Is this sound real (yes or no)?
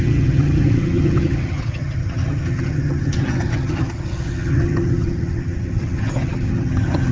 no